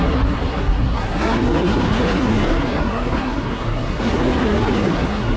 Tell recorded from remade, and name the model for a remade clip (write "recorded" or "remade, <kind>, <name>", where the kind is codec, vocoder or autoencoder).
remade, codec, SNAC